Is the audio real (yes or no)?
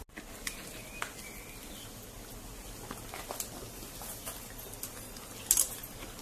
yes